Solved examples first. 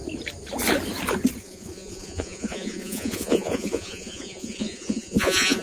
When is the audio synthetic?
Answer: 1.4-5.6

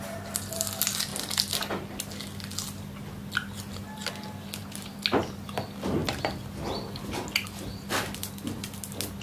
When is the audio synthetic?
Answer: none

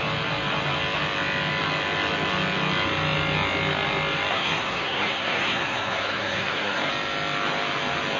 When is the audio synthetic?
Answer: 4.3-6.9

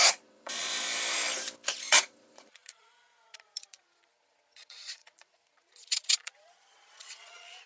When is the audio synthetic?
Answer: 0.0-0.7; 1.9-7.7

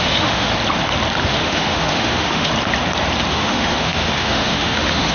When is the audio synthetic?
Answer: 0.0-0.5; 1.3-2.5; 3.3-5.1